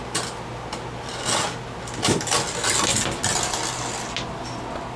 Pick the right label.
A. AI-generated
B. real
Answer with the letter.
B